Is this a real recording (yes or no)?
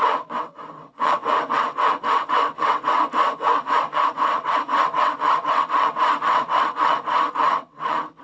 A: no